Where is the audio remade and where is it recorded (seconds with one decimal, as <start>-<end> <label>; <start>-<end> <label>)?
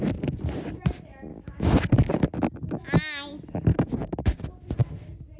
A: 0.0-1.3 recorded; 1.3-1.9 remade; 1.9-3.7 recorded; 3.7-4.5 remade; 4.5-5.4 recorded